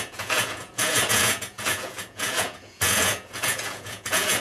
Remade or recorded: remade